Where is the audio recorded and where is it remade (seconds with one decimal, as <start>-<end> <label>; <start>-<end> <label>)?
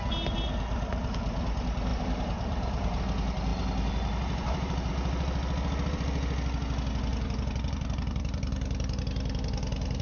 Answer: 0.0-1.9 recorded; 1.9-3.0 remade; 3.0-3.5 recorded; 3.5-4.9 remade; 4.9-7.1 recorded; 7.1-9.0 remade; 9.0-10.0 recorded